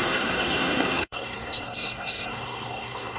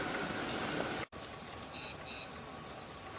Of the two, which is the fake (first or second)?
first